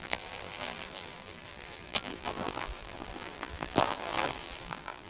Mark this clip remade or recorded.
remade